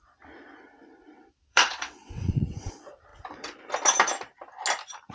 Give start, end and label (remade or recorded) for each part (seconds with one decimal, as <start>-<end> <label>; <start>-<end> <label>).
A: 0.0-1.5 recorded; 1.5-2.7 remade; 2.7-5.1 recorded